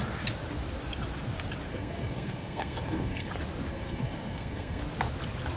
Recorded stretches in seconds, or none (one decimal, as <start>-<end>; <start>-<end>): 0.0-1.7; 3.3-3.7; 4.8-5.6